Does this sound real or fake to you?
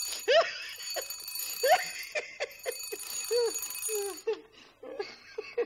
real